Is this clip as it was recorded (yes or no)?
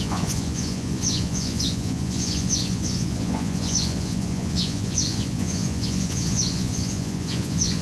no